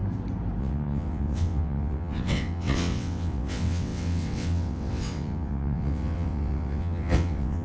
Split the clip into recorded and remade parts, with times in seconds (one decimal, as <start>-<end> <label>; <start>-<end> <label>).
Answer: 0.0-0.6 recorded; 0.6-7.6 remade